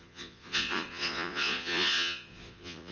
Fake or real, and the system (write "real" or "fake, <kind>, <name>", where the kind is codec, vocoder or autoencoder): fake, vocoder, Vocos